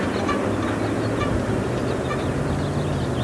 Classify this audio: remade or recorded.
recorded